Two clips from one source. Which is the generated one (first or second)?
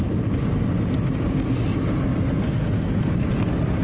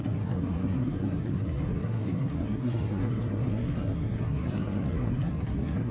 second